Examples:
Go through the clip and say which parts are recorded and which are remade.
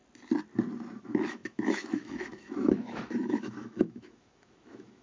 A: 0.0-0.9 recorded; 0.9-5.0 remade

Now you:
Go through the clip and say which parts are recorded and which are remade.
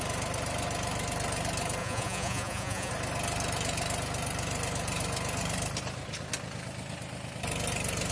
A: 0.0-1.8 recorded; 1.8-2.9 remade; 2.9-8.1 recorded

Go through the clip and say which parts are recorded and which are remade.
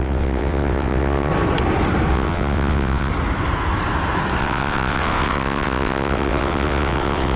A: 0.0-1.3 remade; 1.3-2.1 recorded; 2.1-3.1 remade; 3.1-4.4 recorded; 4.4-7.4 remade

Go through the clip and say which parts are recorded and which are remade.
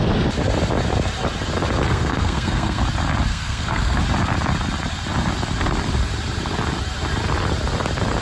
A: 0.0-1.9 recorded; 1.9-2.8 remade; 2.8-3.3 recorded; 3.3-4.0 remade; 4.0-8.2 recorded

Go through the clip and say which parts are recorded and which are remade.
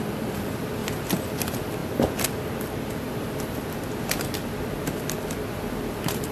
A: 0.0-0.8 remade; 0.8-1.4 recorded; 1.4-1.8 remade; 1.8-5.6 recorded; 5.6-6.3 remade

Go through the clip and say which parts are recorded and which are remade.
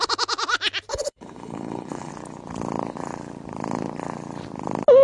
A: 0.0-0.9 recorded; 0.9-2.1 remade; 2.1-5.0 recorded